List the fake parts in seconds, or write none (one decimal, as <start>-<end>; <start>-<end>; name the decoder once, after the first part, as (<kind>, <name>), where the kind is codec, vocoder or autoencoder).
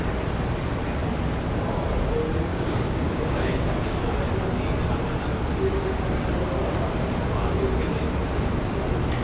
2.5-4.0 (codec, DAC)